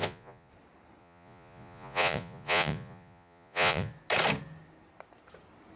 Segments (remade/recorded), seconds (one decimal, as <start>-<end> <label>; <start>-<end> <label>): 0.0-0.5 remade; 0.5-1.0 recorded; 1.0-3.9 remade; 3.9-5.8 recorded